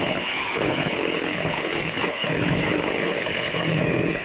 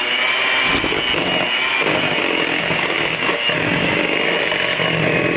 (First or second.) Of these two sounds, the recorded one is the second